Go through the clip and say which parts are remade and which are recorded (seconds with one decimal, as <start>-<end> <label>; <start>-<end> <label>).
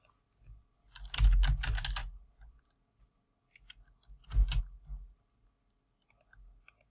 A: 0.0-6.9 recorded